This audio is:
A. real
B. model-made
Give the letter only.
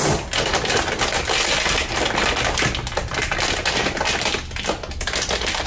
A